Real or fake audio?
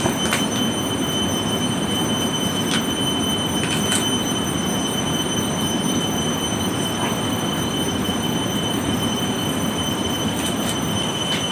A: real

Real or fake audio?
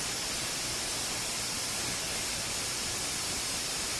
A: real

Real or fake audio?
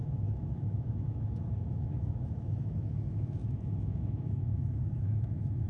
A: fake